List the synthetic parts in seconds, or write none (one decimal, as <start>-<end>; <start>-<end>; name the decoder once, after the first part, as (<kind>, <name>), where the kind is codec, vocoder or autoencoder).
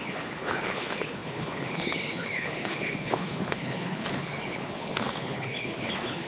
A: 0.0-6.3 (codec, HILCodec)